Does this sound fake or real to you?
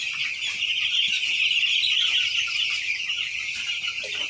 real